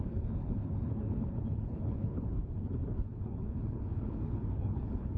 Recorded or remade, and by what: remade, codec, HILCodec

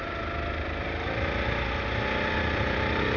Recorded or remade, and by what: recorded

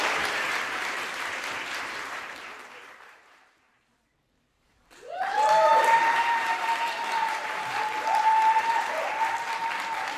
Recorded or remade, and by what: remade, vocoder, BigVGAN v2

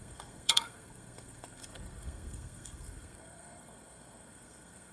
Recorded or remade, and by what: remade, codec, SNAC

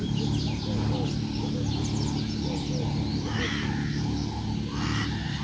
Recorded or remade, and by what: recorded